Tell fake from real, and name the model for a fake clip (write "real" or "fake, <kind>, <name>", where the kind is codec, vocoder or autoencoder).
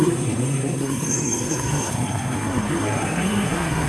fake, codec, SNAC